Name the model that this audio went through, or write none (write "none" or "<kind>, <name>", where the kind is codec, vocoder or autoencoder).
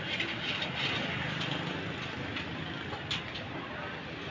none